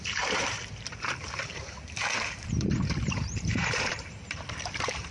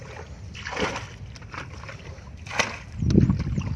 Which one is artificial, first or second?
first